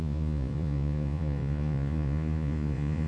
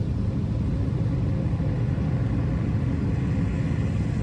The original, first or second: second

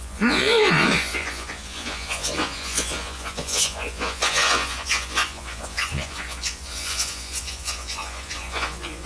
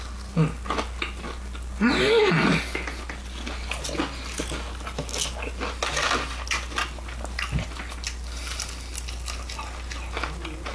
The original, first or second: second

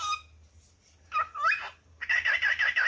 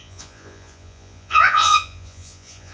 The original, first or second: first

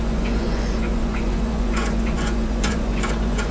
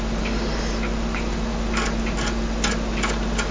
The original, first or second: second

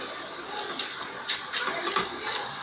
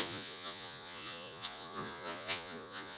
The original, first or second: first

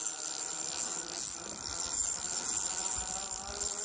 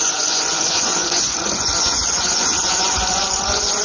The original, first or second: first